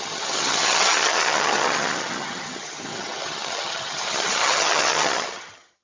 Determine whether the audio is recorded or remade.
remade